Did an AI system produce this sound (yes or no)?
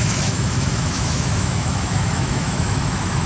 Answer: yes